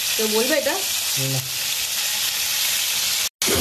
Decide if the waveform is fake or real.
real